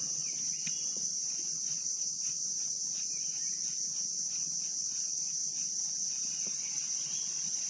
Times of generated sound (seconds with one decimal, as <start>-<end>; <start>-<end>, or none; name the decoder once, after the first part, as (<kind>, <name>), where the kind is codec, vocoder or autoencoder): 0.0-3.4 (vocoder, Vocos); 4.8-5.4; 6.4-7.7